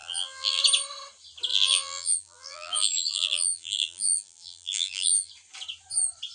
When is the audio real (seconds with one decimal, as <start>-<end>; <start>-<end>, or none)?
0.6-1.5; 5.3-6.3